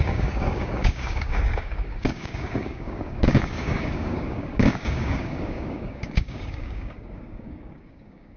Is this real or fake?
fake